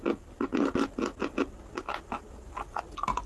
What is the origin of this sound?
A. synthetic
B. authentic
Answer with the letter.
B